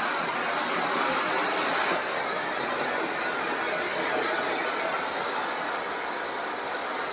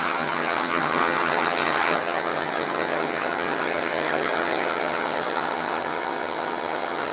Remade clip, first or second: second